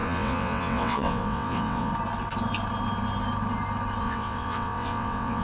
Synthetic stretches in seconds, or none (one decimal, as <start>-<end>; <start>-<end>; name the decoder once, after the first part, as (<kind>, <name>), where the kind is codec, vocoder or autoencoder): 0.0-1.9 (vocoder, WaveNeXt); 4.0-5.4